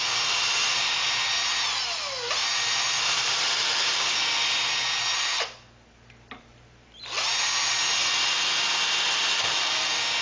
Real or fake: real